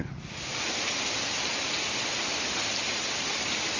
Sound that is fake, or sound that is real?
real